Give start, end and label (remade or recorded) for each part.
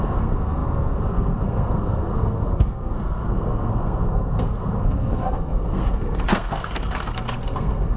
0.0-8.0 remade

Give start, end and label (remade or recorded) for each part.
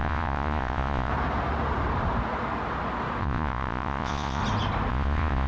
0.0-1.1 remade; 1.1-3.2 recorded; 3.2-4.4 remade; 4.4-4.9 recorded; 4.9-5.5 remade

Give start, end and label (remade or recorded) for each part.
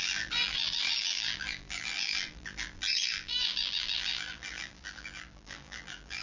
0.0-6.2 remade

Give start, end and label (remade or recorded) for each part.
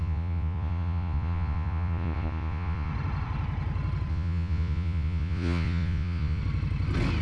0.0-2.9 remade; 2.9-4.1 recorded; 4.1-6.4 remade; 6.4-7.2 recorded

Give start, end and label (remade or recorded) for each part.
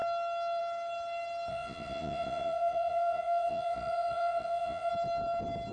0.0-1.5 recorded; 1.5-4.9 remade; 4.9-5.7 recorded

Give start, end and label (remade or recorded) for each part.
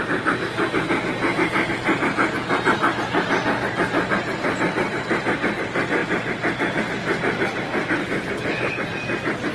0.0-8.0 recorded; 8.0-8.8 remade; 8.8-9.5 recorded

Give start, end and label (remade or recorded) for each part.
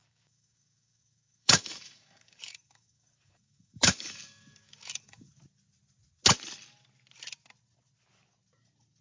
0.0-5.3 remade; 5.3-9.0 recorded